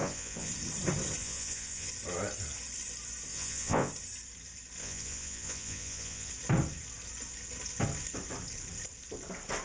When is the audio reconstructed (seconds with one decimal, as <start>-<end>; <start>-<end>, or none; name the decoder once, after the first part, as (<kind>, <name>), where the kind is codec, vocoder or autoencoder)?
0.0-0.5 (vocoder, Vocos); 1.2-1.9; 3.3-3.9; 4.8-6.3